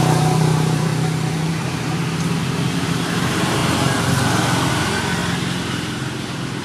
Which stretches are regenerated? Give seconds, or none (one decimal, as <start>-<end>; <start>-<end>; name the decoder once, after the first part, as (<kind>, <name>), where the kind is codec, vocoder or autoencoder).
0.0-0.9 (vocoder, BigVGAN v2); 1.5-2.0; 2.8-3.6; 4.7-6.6